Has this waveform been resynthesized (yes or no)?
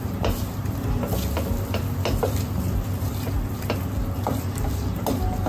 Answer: no